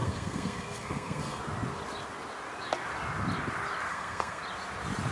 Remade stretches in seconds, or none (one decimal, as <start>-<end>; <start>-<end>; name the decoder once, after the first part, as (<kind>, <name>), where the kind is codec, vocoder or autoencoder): 0.0-1.4 (codec, SNAC); 3.9-4.4